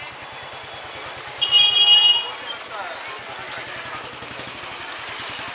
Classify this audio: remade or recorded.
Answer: recorded